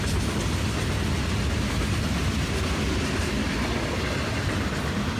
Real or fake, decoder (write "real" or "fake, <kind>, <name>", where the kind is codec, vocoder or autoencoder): real